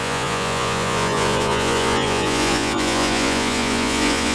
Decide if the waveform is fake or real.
fake